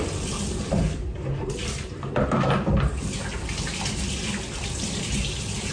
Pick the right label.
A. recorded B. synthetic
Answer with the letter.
A